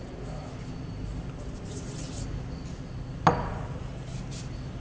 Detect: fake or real real